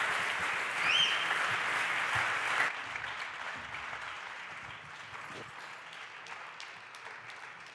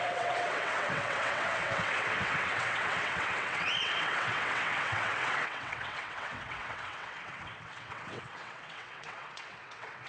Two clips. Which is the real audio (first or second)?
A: first